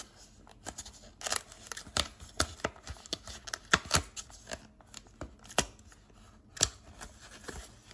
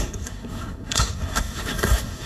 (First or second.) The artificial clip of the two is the second